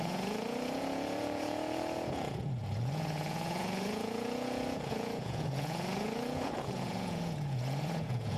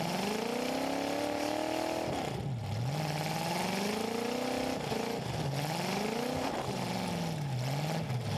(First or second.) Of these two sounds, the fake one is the first